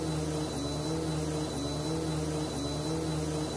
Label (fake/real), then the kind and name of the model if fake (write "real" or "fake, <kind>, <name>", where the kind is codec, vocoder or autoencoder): real